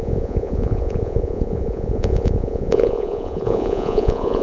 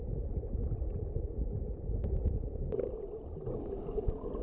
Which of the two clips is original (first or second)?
second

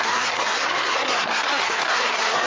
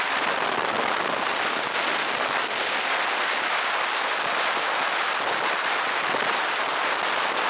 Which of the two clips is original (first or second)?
second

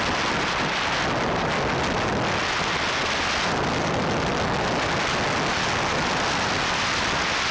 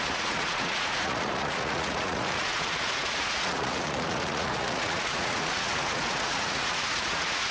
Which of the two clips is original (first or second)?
first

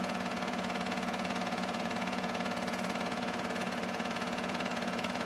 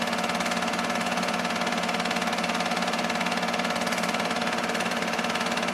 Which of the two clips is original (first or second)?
second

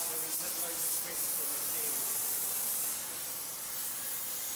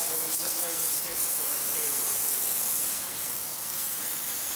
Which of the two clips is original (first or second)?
first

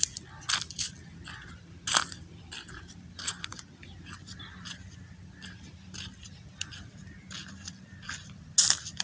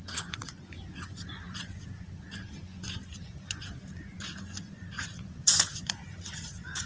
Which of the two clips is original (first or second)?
first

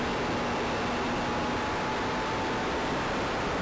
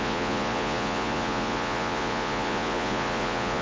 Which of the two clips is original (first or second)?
first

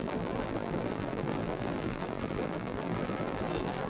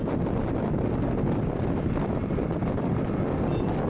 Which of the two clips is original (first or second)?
second